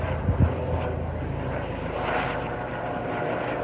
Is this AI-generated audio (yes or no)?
no